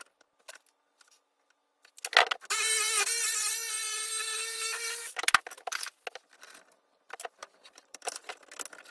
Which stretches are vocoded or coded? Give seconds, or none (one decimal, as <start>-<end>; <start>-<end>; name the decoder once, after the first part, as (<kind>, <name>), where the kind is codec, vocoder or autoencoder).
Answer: 4.3-5.0 (vocoder, BigVGAN v2); 7.4-8.2